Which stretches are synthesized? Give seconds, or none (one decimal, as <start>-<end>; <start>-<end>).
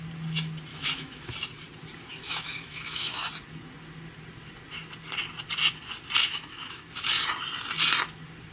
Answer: 0.7-1.3; 2.1-3.3; 6.2-6.9